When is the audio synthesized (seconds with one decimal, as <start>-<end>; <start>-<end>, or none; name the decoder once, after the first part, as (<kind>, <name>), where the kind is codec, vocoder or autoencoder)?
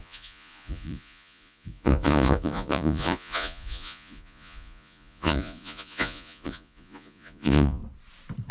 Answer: 0.0-7.8 (vocoder, Vocos)